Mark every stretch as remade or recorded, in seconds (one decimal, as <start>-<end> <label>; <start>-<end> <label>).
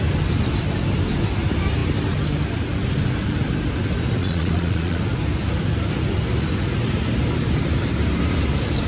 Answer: 0.0-4.2 recorded; 4.2-5.0 remade; 5.0-8.9 recorded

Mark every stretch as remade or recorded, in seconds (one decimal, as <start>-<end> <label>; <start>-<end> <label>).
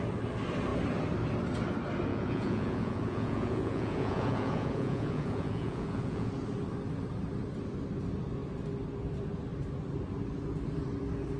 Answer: 0.0-2.1 recorded; 2.1-6.3 remade; 6.3-11.4 recorded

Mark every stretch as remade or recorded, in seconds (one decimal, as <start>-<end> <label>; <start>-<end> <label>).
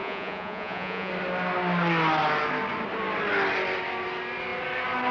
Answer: 0.0-1.1 remade; 1.1-5.1 recorded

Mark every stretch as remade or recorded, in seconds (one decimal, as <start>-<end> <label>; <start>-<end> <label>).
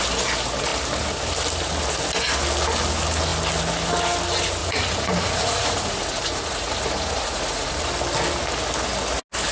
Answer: 0.0-4.6 recorded; 4.6-7.8 remade; 7.8-9.5 recorded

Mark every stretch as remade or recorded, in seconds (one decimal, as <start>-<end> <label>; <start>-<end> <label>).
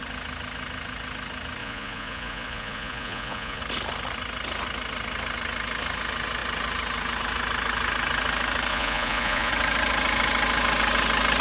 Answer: 0.0-1.6 recorded; 1.6-3.6 remade; 3.6-8.7 recorded; 8.7-9.5 remade; 9.5-11.4 recorded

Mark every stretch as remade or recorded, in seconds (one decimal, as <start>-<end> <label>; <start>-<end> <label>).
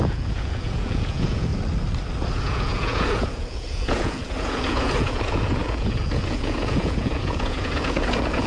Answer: 0.0-1.5 remade; 1.5-2.3 recorded; 2.3-8.5 remade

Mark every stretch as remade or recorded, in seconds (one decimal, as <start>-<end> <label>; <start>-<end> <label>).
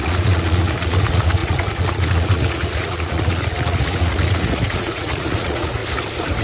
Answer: 0.0-5.8 remade; 5.8-6.4 recorded